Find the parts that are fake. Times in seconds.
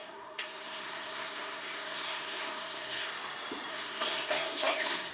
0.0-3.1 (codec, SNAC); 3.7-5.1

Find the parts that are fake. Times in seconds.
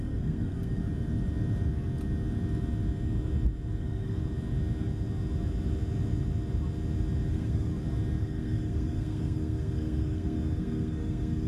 0.0-0.8 (codec, SNAC); 3.8-4.2; 7.3-7.7; 8.2-11.5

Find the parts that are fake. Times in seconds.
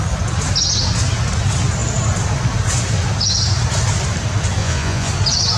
4.6-5.1 (vocoder, Vocos)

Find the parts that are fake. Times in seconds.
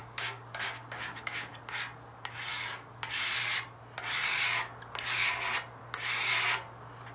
0.0-1.5 (codec, DAC)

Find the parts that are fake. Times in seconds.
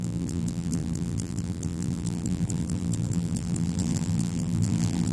0.0-5.1 (vocoder, BigVGAN v2)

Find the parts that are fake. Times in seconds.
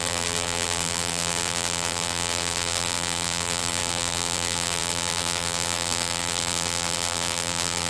0.0-7.9 (vocoder, BigVGAN v2)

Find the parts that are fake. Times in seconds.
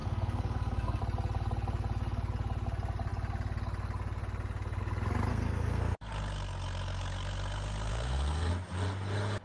0.0-1.0 (codec, SNAC); 5.3-6.0; 7.9-8.5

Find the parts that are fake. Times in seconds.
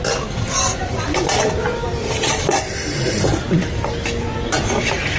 none